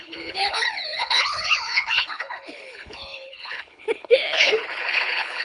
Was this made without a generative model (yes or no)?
no